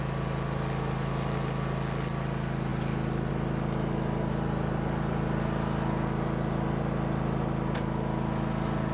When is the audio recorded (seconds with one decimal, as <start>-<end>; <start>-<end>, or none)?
0.0-8.9

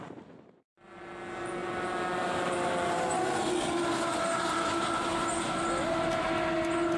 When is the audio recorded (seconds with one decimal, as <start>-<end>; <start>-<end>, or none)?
0.0-7.0

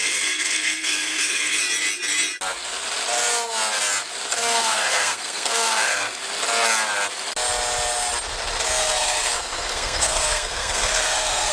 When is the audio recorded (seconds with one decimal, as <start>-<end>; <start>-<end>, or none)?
1.6-4.3; 6.2-8.8

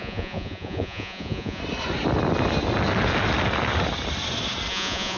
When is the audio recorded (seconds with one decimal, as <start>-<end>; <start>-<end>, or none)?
1.6-4.7

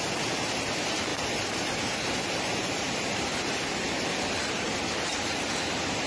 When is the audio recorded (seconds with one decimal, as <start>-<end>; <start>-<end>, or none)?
0.0-6.1

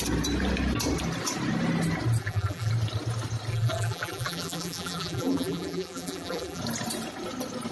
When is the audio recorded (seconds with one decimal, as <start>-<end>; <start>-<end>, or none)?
0.0-2.2; 2.7-3.5; 6.6-7.7